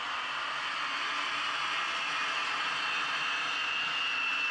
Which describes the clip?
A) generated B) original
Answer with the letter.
B